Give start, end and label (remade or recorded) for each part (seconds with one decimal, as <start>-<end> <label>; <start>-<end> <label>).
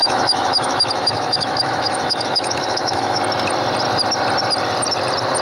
0.0-3.2 remade; 3.2-5.4 recorded